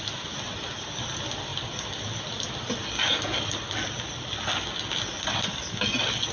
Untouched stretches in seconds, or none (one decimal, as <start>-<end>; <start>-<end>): 0.0-6.3